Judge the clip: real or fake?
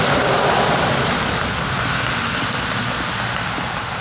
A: real